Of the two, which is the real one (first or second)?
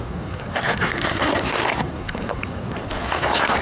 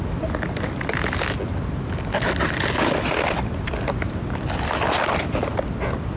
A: second